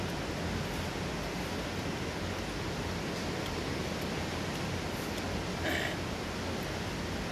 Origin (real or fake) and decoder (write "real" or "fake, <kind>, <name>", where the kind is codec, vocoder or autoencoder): real